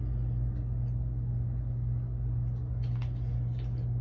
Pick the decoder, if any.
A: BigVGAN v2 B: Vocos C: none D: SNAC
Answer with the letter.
C